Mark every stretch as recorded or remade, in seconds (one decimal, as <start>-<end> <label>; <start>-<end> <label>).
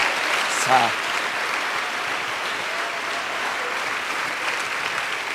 0.0-5.3 recorded